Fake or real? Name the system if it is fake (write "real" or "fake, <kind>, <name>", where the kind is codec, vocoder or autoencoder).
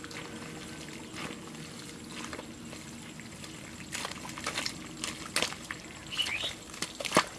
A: real